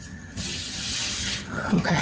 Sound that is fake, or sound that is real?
fake